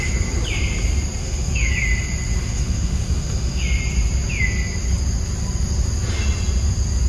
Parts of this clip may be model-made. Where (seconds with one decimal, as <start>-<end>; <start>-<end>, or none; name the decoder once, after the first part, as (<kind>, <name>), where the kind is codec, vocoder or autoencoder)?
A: 1.2-1.7 (autoencoder, DAC-VAE); 2.4-3.6